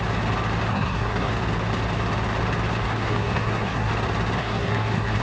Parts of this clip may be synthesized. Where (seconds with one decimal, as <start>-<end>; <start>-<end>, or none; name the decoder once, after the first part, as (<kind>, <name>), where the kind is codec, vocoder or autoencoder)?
0.7-1.3 (codec, SNAC); 2.8-3.9; 4.4-5.2